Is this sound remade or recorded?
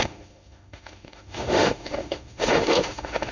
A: remade